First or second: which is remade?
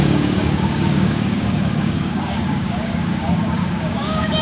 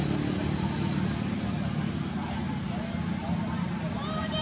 first